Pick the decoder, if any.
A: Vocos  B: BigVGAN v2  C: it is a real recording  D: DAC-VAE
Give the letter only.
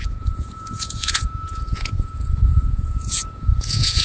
A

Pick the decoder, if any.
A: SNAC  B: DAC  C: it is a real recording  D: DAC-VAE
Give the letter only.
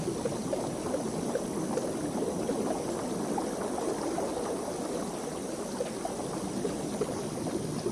C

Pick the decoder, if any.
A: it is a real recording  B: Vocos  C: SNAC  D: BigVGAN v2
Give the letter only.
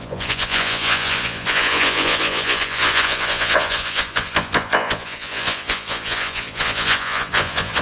B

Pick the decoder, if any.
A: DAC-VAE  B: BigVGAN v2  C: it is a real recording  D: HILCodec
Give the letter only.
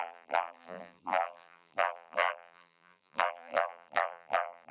B